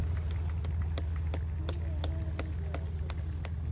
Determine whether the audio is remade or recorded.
recorded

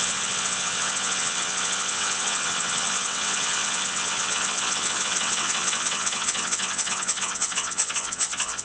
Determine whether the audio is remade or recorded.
remade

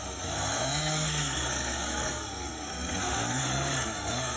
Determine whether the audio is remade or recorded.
remade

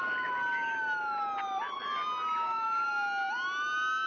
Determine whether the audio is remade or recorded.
recorded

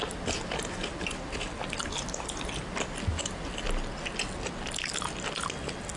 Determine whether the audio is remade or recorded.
recorded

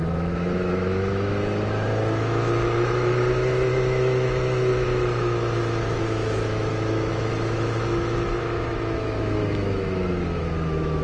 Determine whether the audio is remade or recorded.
remade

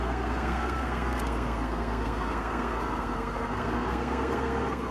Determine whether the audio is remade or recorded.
remade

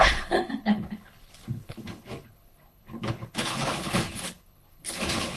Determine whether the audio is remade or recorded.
remade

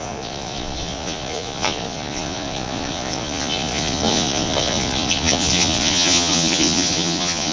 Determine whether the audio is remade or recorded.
remade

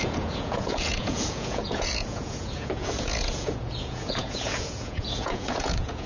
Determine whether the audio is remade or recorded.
remade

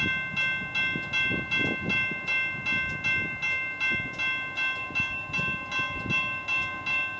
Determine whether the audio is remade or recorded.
recorded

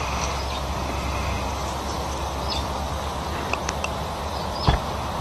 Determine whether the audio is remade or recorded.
recorded